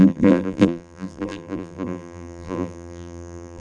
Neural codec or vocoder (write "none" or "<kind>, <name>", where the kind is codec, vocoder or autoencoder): vocoder, BigVGAN v2